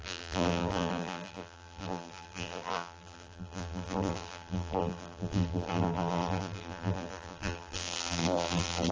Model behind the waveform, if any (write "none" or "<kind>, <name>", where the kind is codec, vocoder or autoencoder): vocoder, BigVGAN v2